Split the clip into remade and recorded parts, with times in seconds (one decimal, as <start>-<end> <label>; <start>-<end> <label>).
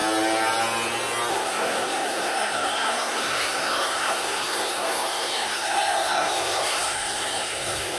0.0-1.3 recorded; 1.3-8.0 remade